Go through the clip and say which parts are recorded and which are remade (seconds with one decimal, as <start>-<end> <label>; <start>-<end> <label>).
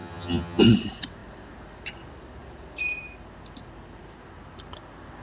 0.0-0.6 remade; 0.6-5.2 recorded